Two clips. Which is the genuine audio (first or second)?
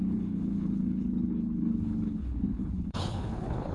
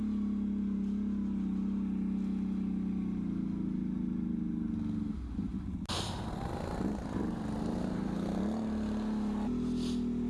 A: second